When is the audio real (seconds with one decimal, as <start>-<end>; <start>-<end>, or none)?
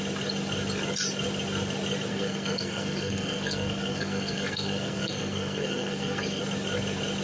0.0-2.1; 6.4-7.2